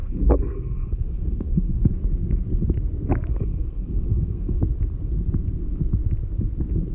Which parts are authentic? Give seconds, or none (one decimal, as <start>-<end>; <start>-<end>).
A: 1.9-3.3; 4.6-6.9